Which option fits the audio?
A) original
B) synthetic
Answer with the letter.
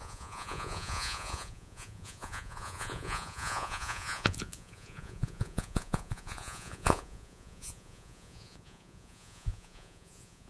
B